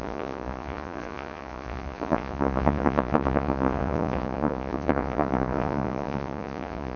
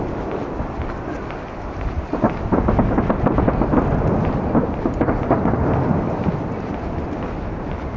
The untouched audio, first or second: second